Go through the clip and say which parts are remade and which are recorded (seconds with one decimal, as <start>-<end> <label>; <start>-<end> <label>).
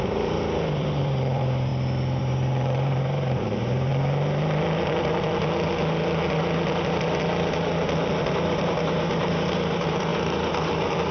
0.0-1.7 remade; 1.7-2.2 recorded; 2.2-3.9 remade; 3.9-8.2 recorded; 8.2-11.1 remade